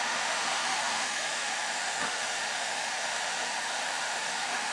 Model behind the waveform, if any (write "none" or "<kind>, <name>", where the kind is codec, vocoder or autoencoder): autoencoder, DAC-VAE